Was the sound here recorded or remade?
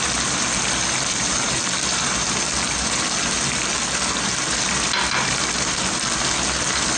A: recorded